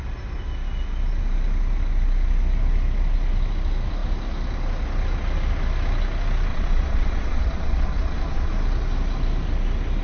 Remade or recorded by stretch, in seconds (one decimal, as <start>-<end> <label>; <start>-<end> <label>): 0.0-6.5 recorded; 6.5-8.5 remade; 8.5-10.0 recorded